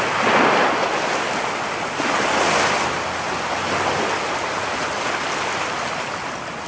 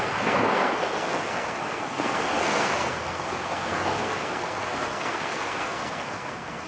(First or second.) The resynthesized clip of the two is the second